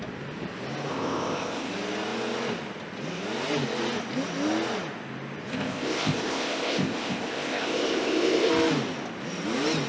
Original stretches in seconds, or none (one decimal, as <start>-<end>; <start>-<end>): 0.0-0.9; 1.7-5.5; 8.5-9.9